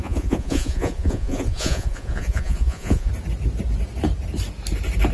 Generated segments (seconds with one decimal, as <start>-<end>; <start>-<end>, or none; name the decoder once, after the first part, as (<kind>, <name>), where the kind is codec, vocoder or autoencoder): 0.0-3.1 (vocoder, Vocos)